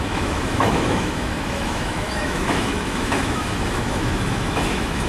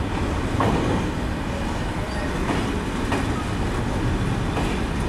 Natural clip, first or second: second